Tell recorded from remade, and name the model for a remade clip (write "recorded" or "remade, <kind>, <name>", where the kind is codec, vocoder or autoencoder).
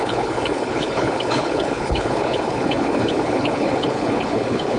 remade, codec, HILCodec